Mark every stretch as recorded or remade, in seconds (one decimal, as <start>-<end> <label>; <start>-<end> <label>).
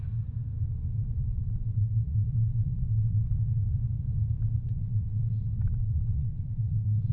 0.0-1.3 recorded; 1.3-3.3 remade; 3.3-4.6 recorded; 4.6-7.1 remade